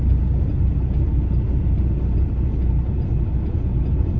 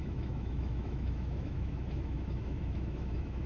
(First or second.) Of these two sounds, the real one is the first